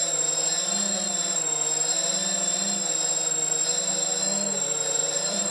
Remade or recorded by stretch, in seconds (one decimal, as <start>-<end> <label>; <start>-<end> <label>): 0.0-5.0 recorded; 5.0-5.5 remade